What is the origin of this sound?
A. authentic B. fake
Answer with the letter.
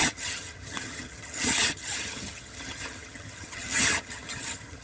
B